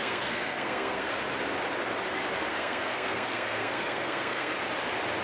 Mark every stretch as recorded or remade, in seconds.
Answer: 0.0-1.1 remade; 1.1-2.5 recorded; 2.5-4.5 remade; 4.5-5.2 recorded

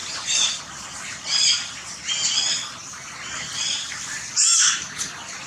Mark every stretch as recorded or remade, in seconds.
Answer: 0.0-5.5 recorded

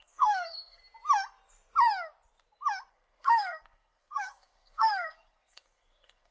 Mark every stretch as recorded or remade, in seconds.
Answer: 0.0-0.8 remade; 0.8-2.9 recorded; 2.9-6.3 remade

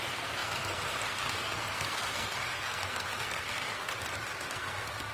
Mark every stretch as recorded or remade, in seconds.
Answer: 0.0-3.9 remade; 3.9-4.5 recorded; 4.5-5.1 remade

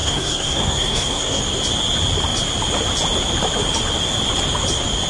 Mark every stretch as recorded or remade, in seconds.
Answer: 0.0-1.4 remade; 1.4-5.1 recorded

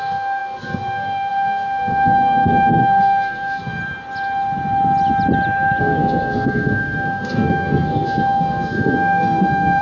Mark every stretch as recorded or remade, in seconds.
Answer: 0.0-3.8 remade; 3.8-5.8 recorded; 5.8-9.8 remade

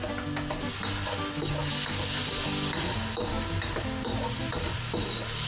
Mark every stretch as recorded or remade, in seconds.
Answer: 0.0-5.5 recorded

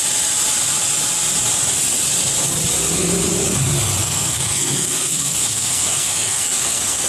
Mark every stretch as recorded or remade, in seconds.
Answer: 0.0-4.0 recorded; 4.0-7.1 remade